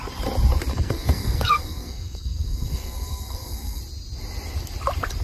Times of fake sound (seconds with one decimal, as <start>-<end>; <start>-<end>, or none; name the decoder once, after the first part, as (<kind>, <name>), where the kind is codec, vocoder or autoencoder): 0.7-3.8 (codec, SNAC)